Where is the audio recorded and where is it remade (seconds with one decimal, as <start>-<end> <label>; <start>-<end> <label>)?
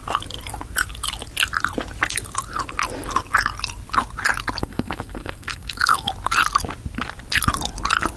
0.0-4.6 recorded; 4.6-6.1 remade; 6.1-8.2 recorded